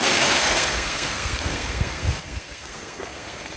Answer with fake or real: fake